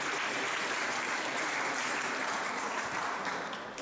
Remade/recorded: remade